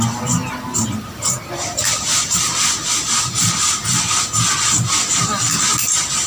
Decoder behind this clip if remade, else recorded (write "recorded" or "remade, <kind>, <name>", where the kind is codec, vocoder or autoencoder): recorded